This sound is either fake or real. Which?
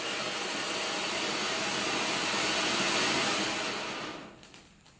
real